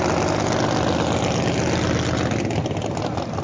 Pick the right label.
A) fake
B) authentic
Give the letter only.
B